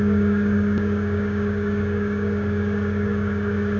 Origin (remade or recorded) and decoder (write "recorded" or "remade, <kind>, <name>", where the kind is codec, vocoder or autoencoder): remade, codec, DAC